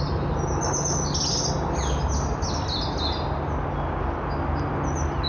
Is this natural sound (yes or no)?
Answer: yes